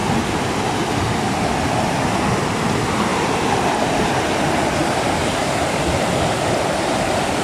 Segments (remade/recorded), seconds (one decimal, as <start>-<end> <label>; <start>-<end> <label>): 0.0-1.7 remade; 1.7-3.1 recorded; 3.1-4.2 remade; 4.2-4.8 recorded; 4.8-5.4 remade; 5.4-7.4 recorded